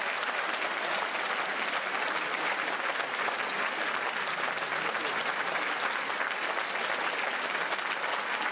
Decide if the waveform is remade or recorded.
recorded